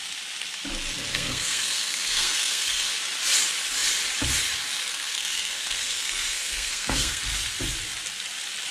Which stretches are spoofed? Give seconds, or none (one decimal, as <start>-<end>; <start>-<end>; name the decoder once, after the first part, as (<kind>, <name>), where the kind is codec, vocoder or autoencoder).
1.1-2.9 (codec, SNAC); 4.9-7.2